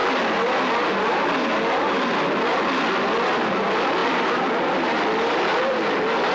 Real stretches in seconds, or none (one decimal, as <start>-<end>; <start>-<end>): 0.0-4.0; 5.5-6.3